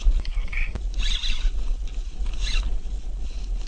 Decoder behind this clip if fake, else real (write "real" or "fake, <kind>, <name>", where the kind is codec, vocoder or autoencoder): real